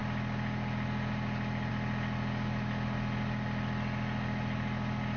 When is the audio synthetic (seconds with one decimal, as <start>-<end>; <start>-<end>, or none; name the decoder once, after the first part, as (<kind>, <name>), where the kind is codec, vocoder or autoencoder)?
none